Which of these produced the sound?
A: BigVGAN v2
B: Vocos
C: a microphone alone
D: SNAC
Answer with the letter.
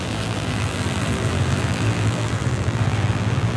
A